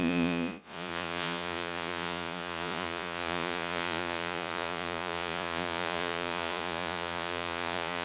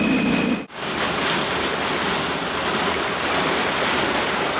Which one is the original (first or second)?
second